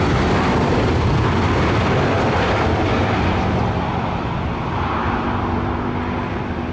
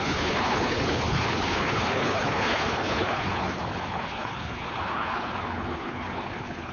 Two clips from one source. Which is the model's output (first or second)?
second